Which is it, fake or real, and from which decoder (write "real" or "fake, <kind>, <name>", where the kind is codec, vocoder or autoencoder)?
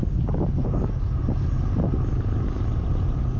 real